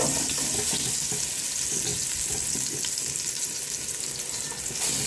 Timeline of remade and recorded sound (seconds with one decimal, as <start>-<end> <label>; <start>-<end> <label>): 0.0-5.1 recorded